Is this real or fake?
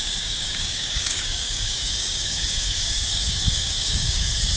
fake